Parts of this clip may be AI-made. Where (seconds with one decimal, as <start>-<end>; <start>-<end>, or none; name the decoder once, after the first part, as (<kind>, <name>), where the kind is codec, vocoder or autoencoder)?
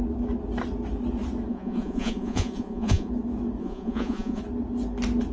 1.5-3.1 (vocoder, Vocos); 3.6-4.4